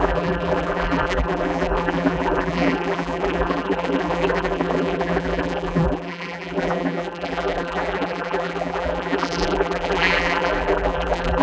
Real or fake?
fake